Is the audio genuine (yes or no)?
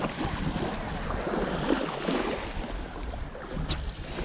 yes